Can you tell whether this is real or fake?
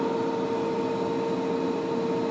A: real